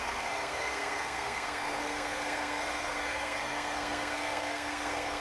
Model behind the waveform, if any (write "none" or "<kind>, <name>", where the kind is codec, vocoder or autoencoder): codec, SNAC